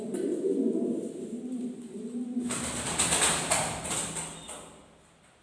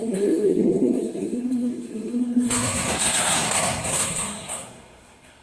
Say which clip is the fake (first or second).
second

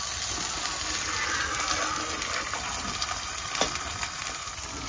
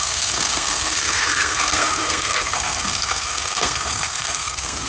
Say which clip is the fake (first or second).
second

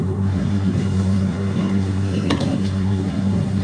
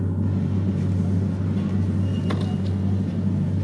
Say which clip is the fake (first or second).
first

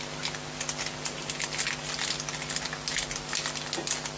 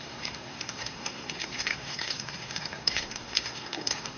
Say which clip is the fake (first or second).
second